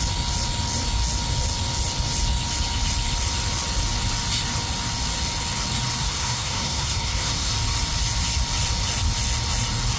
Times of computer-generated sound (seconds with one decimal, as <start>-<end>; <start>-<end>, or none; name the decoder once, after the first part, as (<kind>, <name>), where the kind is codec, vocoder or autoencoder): 6.0-7.5 (codec, SNAC)